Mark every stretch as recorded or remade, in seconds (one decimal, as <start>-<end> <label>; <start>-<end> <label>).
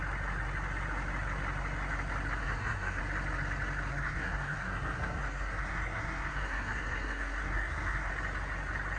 0.0-2.4 recorded; 2.4-3.0 remade; 3.0-3.9 recorded; 3.9-8.1 remade; 8.1-9.0 recorded